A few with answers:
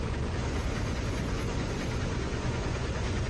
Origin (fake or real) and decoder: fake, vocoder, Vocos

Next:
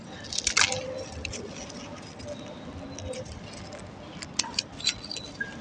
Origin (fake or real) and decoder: real